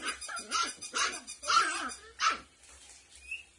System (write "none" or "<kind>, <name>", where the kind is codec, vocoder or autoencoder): none